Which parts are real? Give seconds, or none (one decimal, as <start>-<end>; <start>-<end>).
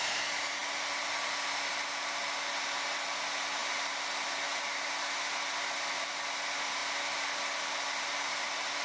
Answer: 0.0-8.8